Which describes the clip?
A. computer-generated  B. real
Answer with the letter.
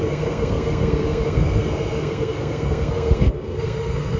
A